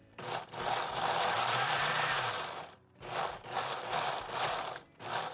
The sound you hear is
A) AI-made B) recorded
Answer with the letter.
A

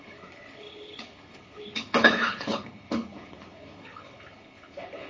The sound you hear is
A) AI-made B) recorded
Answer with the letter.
A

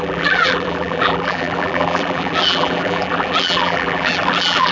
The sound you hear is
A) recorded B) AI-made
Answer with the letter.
B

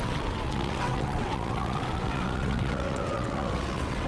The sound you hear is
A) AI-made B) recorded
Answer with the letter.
A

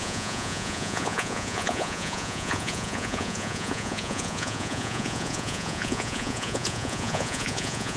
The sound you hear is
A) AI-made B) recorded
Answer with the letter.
A